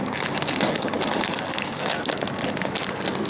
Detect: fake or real real